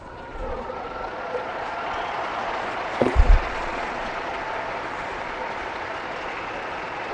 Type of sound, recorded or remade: remade